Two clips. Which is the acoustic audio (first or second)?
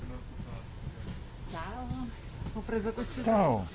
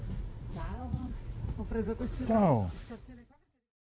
first